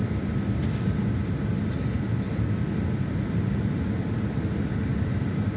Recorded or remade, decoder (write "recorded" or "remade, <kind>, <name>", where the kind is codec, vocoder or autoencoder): recorded